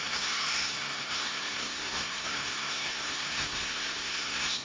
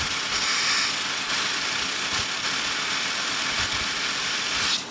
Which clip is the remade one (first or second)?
first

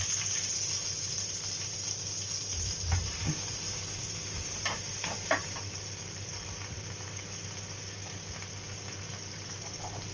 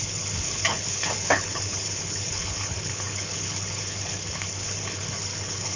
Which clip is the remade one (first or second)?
second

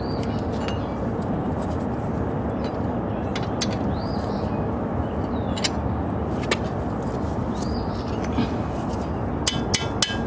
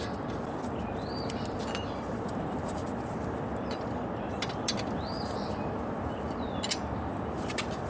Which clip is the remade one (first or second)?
second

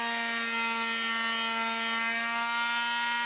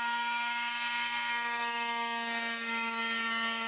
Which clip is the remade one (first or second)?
second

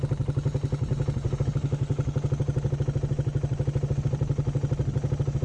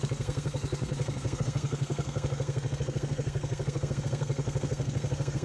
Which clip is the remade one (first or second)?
second